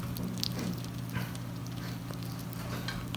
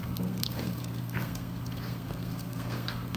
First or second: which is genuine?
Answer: first